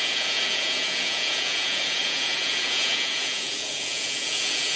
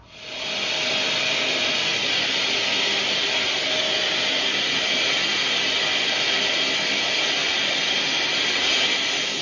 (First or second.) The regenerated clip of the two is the first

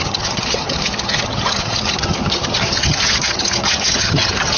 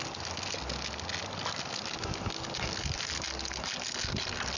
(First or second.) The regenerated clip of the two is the first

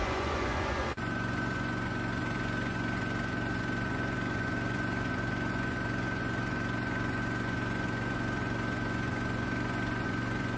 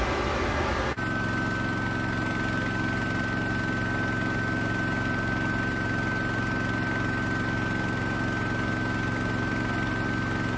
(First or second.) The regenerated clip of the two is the first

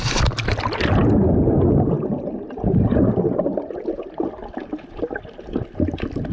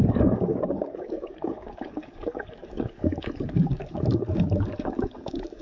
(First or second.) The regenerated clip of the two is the second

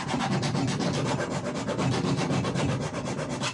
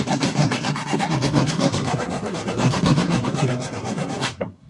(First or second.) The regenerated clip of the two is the second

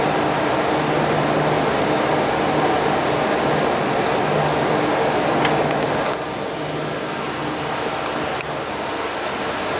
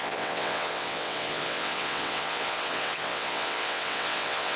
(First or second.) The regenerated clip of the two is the second